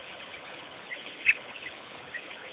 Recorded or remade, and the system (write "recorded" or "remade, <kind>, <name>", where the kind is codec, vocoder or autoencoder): remade, codec, HILCodec